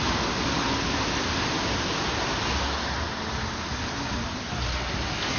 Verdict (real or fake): real